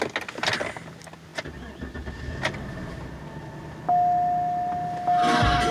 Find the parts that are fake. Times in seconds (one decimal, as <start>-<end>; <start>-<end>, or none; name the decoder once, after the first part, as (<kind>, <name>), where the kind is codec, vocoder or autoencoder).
none

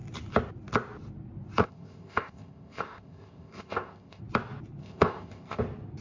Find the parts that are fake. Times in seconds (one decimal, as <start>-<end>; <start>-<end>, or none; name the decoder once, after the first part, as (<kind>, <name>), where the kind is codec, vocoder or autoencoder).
1.6-4.2 (codec, ZipCodec); 4.8-5.6

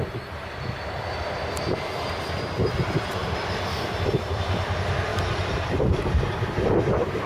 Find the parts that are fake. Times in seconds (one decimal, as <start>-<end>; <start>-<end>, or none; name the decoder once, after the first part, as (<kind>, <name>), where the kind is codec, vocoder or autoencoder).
3.2-4.4 (vocoder, BigVGAN v2); 5.1-6.1

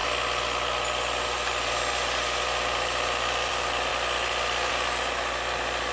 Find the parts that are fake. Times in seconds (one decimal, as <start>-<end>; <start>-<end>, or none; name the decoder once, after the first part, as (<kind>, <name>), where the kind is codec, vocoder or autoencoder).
none

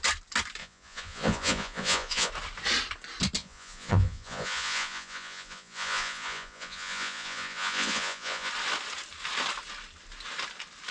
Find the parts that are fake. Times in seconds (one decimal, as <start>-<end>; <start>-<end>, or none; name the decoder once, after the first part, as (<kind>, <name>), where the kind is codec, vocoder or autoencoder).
0.6-2.3 (vocoder, Vocos); 3.4-8.5

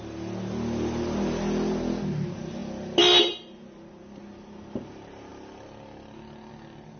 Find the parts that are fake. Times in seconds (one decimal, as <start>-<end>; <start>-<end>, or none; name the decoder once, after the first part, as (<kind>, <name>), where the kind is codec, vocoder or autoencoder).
none

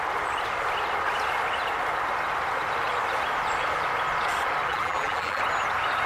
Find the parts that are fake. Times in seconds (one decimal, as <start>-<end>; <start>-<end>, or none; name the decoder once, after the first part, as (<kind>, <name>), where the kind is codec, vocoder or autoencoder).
4.7-5.4 (vocoder, BigVGAN v2)

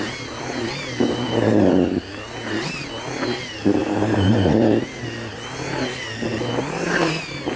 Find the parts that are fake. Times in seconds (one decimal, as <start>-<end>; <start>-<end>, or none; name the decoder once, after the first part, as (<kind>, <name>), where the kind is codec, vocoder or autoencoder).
3.8-4.6 (vocoder, BigVGAN v2)